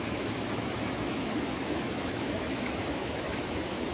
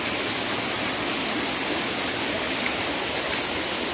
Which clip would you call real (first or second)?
second